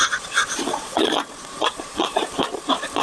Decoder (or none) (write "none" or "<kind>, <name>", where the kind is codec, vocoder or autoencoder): vocoder, Vocos